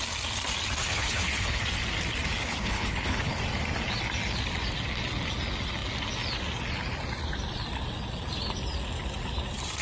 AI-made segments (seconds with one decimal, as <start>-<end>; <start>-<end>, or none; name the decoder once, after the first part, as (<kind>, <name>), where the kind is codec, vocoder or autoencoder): 0.8-1.6 (codec, HILCodec); 2.4-3.4